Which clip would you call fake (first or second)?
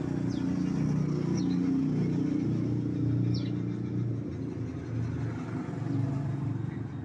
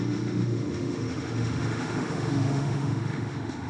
second